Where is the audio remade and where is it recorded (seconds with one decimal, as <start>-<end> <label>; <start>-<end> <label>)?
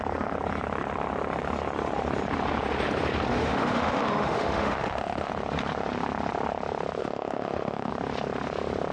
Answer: 0.0-3.3 recorded; 3.3-5.3 remade; 5.3-7.0 recorded; 7.0-7.9 remade; 7.9-8.9 recorded